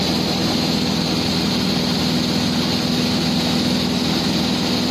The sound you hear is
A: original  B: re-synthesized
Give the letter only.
A